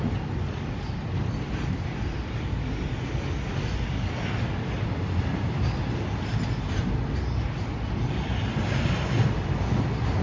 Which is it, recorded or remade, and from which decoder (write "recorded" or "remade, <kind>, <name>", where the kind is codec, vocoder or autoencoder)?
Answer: recorded